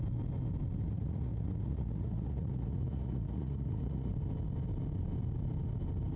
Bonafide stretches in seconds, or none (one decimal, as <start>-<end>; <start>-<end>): 0.0-0.9; 4.1-6.2

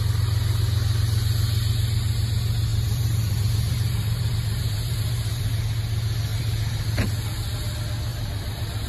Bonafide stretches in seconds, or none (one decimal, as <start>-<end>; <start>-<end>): 0.0-2.7; 5.6-6.3; 7.1-8.1

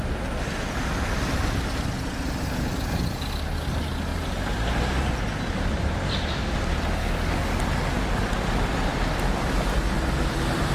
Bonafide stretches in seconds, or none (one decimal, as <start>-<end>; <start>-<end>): 0.0-7.0; 7.6-10.7

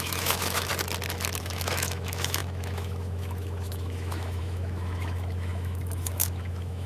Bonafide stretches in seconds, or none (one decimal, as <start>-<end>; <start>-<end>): 0.7-1.4

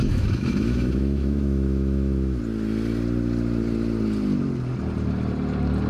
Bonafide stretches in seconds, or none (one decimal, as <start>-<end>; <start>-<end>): 2.4-5.9

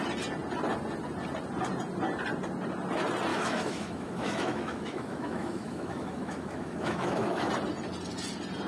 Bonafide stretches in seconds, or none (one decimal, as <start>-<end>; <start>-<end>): 0.0-3.3; 7.5-8.7

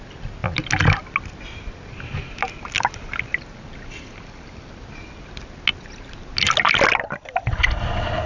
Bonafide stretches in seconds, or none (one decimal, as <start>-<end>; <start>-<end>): 0.0-8.3